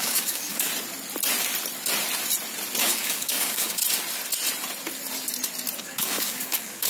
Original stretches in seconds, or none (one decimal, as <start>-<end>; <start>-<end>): 0.7-2.8; 3.8-5.8